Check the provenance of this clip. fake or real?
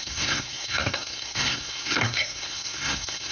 fake